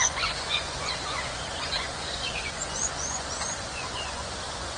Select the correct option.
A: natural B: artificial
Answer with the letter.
B